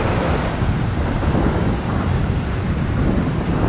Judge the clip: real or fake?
fake